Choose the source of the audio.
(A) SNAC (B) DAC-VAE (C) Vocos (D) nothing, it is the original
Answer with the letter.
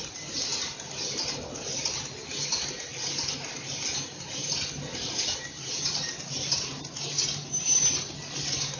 D